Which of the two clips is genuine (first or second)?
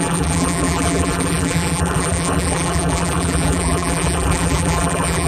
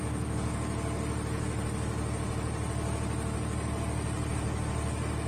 second